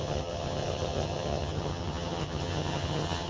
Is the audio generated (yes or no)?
yes